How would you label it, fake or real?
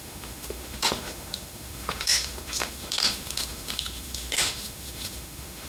fake